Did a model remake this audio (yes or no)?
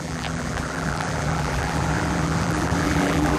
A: yes